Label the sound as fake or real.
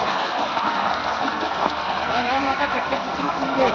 fake